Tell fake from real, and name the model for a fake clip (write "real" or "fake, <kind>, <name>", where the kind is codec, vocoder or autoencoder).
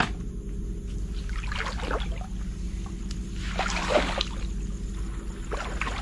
real